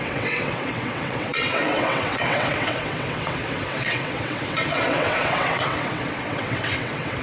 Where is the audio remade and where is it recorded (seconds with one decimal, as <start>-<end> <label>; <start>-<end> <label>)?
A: 0.0-7.2 remade